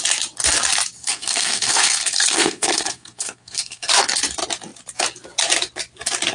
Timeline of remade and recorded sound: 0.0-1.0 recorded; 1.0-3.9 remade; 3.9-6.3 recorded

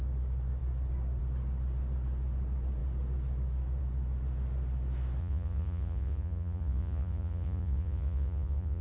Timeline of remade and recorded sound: 0.0-5.2 recorded; 5.2-8.8 remade

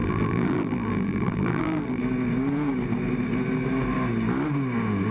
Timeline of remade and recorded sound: 0.0-2.0 remade; 2.0-5.1 recorded

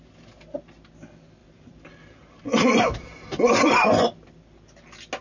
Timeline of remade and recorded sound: 0.0-1.4 recorded; 1.4-3.7 remade; 3.7-5.2 recorded

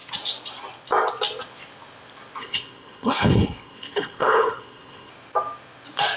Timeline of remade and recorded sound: 0.0-2.4 recorded; 2.4-5.1 remade; 5.1-6.2 recorded